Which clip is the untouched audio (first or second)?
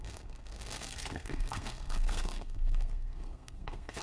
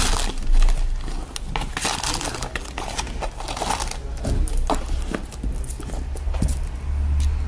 second